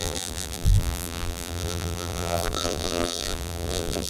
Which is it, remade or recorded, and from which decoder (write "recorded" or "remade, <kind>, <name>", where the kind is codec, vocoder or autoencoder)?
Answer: remade, vocoder, BigVGAN v2